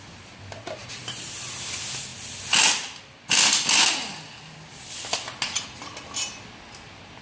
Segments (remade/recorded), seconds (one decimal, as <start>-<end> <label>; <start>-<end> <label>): 0.0-0.8 recorded; 0.8-1.4 remade; 1.4-7.2 recorded